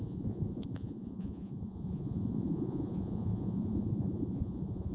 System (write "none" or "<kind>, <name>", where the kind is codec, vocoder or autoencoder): vocoder, Vocos